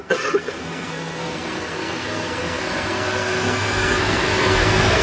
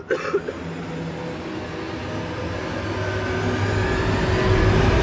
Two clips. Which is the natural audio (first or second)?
second